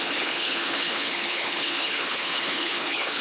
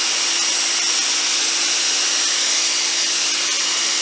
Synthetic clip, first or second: first